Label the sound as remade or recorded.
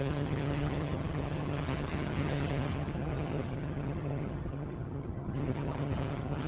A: remade